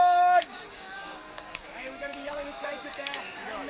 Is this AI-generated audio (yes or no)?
yes